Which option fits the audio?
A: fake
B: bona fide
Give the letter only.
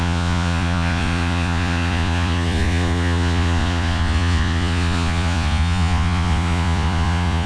A